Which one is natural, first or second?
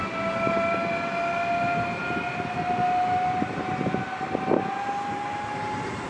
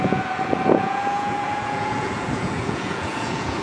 first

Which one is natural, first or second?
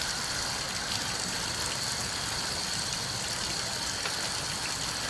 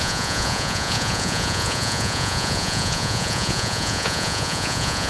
first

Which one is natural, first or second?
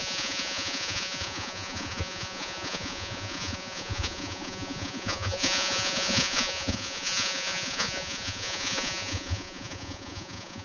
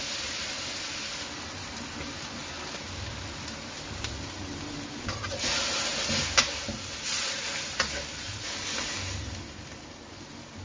second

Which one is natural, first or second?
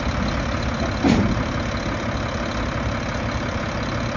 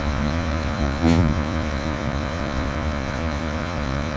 first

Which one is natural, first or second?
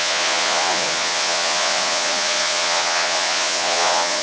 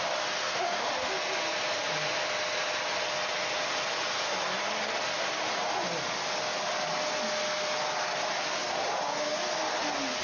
second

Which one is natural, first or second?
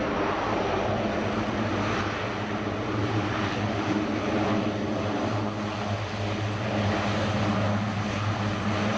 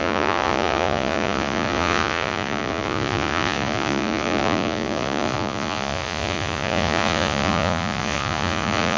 first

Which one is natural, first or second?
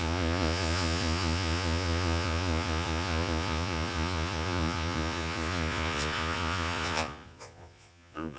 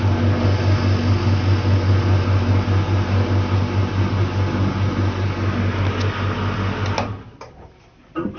second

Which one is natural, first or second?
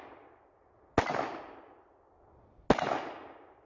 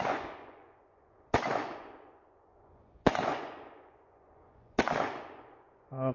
first